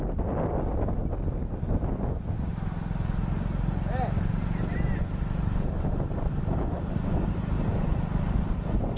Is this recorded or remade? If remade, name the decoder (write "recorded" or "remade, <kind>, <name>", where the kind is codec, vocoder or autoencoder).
recorded